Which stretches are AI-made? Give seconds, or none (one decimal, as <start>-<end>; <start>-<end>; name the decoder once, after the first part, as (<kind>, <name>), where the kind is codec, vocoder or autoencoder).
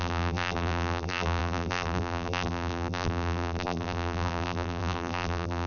0.0-5.7 (vocoder, BigVGAN v2)